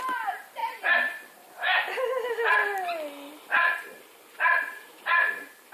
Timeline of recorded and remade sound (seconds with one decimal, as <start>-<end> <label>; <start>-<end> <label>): 0.0-5.7 recorded